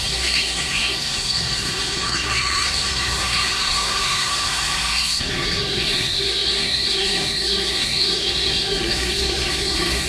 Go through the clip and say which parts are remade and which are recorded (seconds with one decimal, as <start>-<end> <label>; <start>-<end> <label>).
0.0-10.1 remade

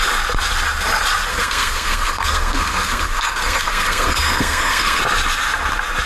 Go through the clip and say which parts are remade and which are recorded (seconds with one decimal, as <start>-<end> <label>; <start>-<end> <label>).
0.0-1.3 recorded; 1.3-5.0 remade; 5.0-6.1 recorded

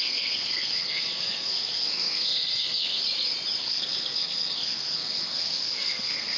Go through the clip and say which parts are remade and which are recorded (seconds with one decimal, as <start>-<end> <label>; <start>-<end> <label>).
0.0-3.0 remade; 3.0-3.6 recorded; 3.6-6.4 remade

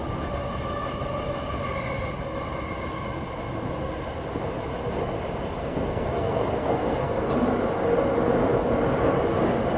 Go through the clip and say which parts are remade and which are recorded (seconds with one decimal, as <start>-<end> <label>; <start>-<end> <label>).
0.0-5.6 recorded; 5.6-7.3 remade; 7.3-9.8 recorded

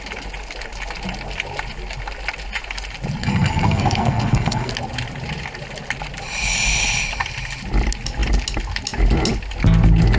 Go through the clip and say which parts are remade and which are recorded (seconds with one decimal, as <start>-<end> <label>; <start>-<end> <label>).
0.0-3.2 recorded; 3.2-4.7 remade; 4.7-10.2 recorded